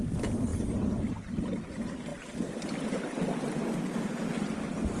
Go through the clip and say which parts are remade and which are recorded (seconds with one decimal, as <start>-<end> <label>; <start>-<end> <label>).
0.0-5.0 recorded

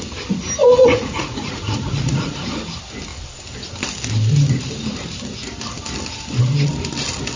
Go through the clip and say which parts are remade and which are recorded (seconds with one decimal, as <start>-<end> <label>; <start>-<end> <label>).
0.0-0.6 recorded; 0.6-2.4 remade; 2.4-7.4 recorded

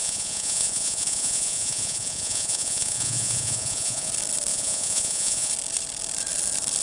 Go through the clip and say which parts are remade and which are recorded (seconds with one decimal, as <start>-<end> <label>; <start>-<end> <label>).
0.0-4.1 remade; 4.1-4.5 recorded; 4.5-5.5 remade; 5.5-6.8 recorded

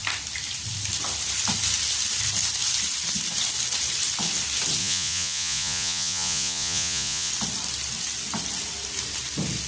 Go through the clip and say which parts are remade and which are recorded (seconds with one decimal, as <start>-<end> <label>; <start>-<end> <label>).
0.0-4.8 recorded; 4.8-7.3 remade; 7.3-9.7 recorded

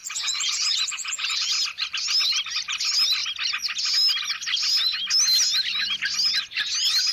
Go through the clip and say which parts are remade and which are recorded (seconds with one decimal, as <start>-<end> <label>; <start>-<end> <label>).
0.0-1.5 remade; 1.5-7.1 recorded

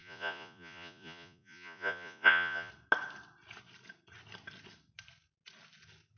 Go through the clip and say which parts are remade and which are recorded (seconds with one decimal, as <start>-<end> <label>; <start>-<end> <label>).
0.0-2.7 remade; 2.7-6.2 recorded